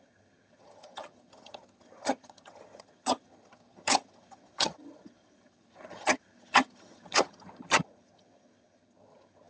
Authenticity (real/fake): fake